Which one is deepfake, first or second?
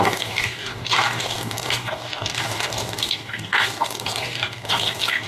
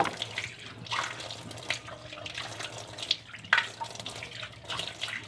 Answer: first